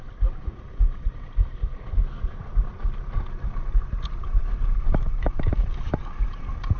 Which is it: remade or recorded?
recorded